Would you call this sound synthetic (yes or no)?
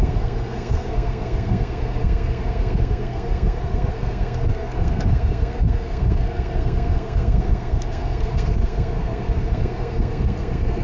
yes